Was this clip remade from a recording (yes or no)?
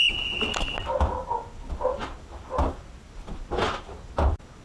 no